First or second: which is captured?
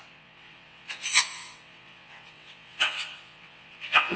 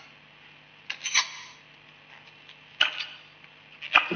second